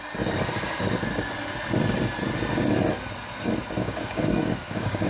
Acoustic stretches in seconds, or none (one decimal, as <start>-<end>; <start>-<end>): 0.0-3.8